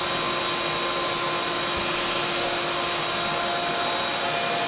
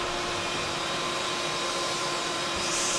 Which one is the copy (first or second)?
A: second